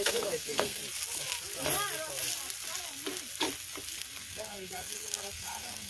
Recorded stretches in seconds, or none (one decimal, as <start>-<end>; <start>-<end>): 0.8-4.3